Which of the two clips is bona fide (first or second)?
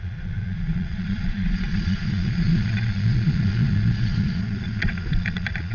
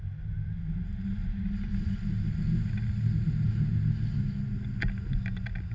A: second